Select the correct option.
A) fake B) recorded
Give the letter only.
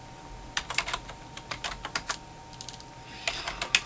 B